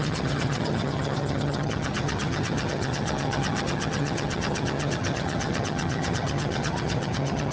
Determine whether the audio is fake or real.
fake